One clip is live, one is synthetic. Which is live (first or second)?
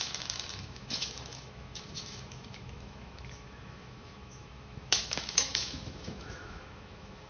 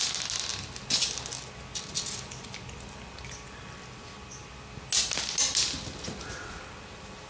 second